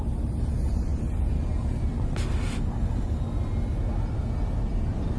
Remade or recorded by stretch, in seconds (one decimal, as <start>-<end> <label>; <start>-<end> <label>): 0.0-5.2 recorded